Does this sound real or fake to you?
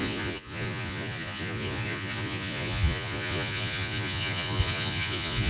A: fake